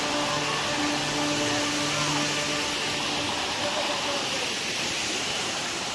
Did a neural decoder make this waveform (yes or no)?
no